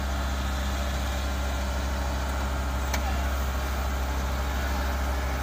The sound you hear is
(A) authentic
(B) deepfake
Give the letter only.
A